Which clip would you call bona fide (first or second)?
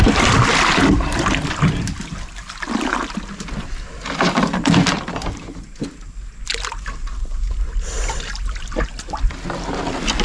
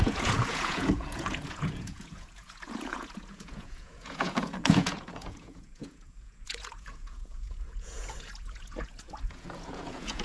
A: first